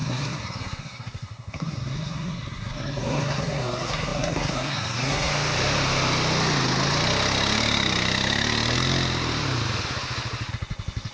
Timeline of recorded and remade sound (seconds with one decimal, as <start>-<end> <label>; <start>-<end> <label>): 0.0-5.3 remade; 5.3-10.5 recorded; 10.5-11.1 remade